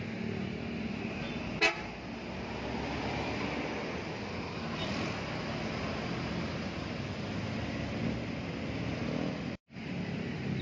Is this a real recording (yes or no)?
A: yes